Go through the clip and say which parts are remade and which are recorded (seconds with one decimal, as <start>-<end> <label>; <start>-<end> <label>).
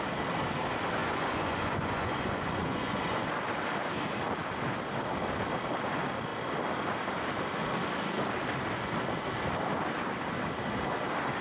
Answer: 0.0-1.0 recorded; 1.0-3.2 remade; 3.2-11.4 recorded